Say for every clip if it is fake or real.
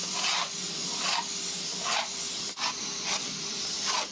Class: real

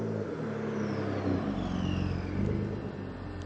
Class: real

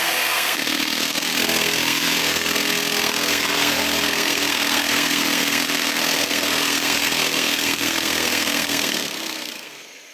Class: fake